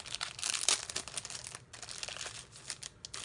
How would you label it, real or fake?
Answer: real